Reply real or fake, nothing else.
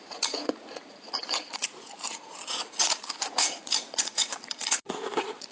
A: fake